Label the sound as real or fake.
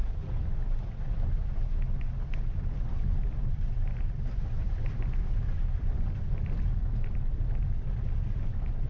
real